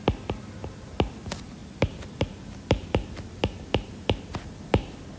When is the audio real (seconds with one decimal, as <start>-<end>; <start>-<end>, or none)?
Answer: 0.0-5.2